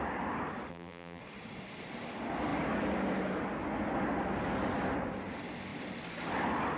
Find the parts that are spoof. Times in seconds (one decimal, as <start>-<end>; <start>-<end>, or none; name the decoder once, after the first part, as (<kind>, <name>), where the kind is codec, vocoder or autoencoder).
0.7-1.2 (vocoder, BigVGAN v2)